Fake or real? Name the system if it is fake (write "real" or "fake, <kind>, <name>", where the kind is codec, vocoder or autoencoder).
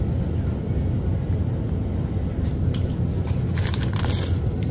real